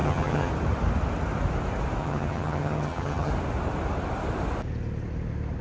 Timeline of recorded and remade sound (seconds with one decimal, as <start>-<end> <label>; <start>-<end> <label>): 0.0-0.5 remade; 0.5-2.0 recorded; 2.0-3.3 remade; 3.3-5.6 recorded

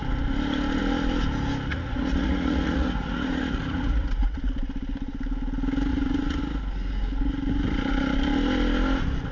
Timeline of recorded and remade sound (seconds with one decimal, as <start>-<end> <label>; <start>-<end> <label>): 0.0-1.7 recorded; 1.7-4.5 remade; 4.5-5.9 recorded; 5.9-6.4 remade; 6.4-9.3 recorded

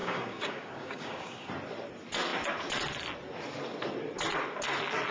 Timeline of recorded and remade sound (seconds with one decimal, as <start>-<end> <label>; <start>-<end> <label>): 0.0-1.5 remade; 1.5-5.1 recorded

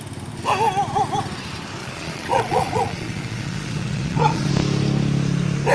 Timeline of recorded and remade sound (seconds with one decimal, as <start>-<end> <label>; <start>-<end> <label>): 0.0-1.8 recorded; 1.8-4.5 remade; 4.5-5.7 recorded

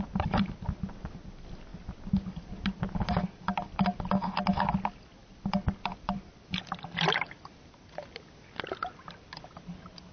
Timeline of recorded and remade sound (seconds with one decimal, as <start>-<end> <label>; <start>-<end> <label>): 0.0-10.1 recorded

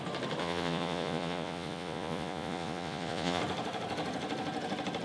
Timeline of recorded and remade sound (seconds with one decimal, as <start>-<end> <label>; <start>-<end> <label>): 0.0-0.4 recorded; 0.4-3.4 remade; 3.4-5.0 recorded

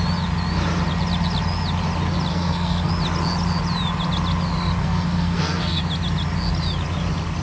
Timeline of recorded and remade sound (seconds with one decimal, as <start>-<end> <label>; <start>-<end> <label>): 0.0-2.3 recorded; 2.3-2.9 remade; 2.9-4.8 recorded; 4.8-5.8 remade; 5.8-7.4 recorded